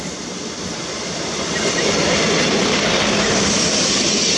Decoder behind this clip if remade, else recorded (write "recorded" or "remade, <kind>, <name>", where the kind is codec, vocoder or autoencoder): remade, vocoder, BigVGAN v2